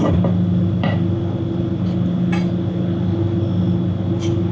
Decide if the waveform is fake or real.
real